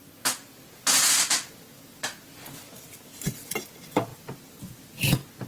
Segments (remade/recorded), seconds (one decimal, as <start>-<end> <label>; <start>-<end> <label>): 0.0-4.1 recorded; 4.1-4.9 remade; 4.9-5.5 recorded